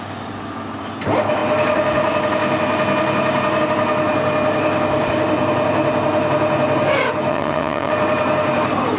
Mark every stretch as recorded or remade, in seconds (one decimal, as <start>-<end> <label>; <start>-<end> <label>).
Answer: 0.0-7.3 recorded; 7.3-7.9 remade; 7.9-9.0 recorded